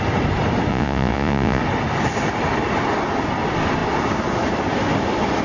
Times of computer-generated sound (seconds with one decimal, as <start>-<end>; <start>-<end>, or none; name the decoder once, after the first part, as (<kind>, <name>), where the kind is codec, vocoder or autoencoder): 0.7-1.6 (vocoder, Vocos)